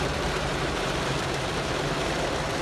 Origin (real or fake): fake